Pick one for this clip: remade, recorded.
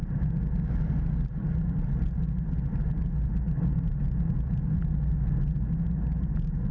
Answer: recorded